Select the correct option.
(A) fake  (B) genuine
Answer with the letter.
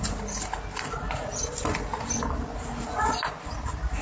B